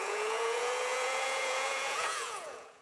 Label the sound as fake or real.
fake